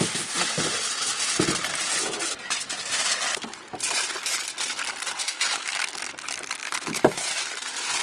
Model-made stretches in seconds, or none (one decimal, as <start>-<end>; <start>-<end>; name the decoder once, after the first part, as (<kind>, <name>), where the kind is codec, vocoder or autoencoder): 5.2-5.9 (autoencoder, DAC-VAE); 6.6-7.3